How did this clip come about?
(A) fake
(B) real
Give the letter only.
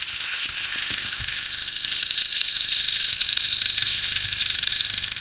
A